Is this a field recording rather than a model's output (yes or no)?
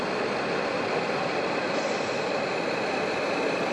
yes